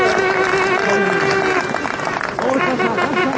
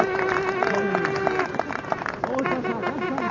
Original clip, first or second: first